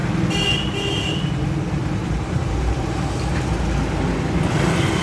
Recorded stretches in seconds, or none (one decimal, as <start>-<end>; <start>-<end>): 0.0-1.8; 3.6-5.0